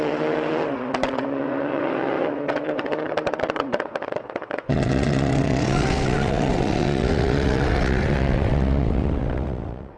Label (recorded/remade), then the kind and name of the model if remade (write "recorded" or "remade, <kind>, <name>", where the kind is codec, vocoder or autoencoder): remade, vocoder, WaveNeXt